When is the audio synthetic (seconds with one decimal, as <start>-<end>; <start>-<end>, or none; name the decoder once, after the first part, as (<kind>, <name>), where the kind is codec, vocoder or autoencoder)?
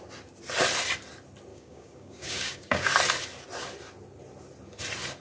1.5-2.9 (codec, DAC)